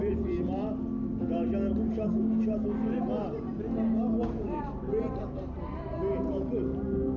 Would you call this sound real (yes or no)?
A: no